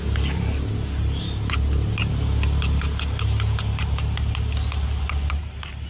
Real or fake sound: real